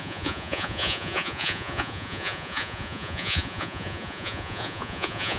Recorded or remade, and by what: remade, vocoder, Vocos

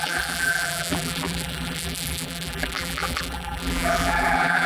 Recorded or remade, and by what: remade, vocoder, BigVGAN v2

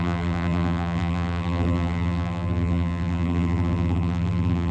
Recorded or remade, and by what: remade, vocoder, BigVGAN v2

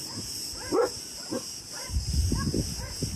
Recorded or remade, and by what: recorded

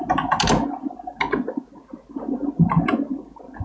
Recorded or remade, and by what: recorded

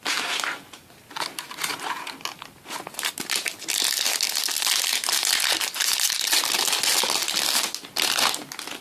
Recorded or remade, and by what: recorded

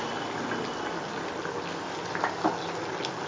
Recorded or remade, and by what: recorded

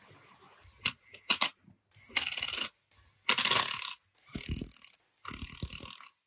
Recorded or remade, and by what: recorded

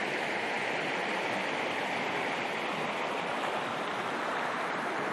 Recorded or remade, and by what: remade, vocoder, BigVGAN v2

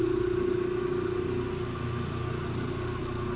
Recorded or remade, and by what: recorded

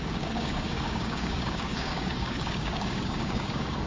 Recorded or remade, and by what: remade, codec, DAC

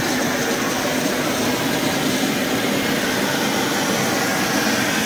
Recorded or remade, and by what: recorded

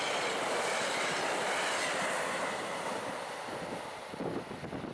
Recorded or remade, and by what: recorded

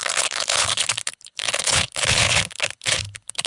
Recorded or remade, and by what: remade, codec, HILCodec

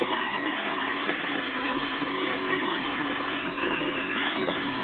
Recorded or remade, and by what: remade, codec, SNAC